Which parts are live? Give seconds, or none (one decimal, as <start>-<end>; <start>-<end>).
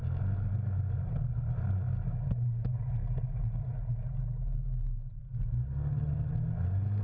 0.0-7.0